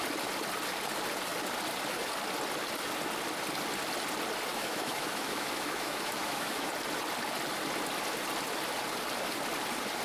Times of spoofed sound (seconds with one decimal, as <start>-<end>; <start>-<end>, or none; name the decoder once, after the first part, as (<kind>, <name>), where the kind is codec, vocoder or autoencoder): 4.5-6.7 (autoencoder, DAC-VAE)